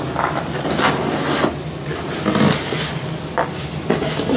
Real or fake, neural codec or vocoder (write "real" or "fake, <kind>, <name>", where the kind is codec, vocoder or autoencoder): real